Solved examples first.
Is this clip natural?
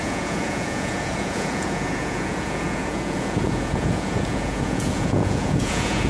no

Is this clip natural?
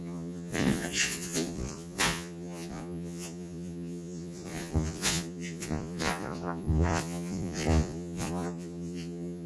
no